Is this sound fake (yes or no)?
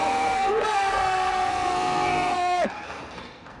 yes